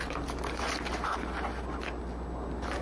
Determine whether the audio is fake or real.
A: real